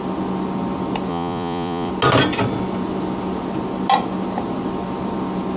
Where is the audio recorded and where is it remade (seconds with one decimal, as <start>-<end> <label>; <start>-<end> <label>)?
0.0-1.1 recorded; 1.1-1.9 remade; 1.9-5.6 recorded